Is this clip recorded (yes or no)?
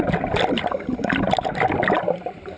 yes